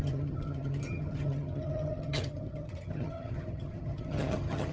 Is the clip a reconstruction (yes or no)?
yes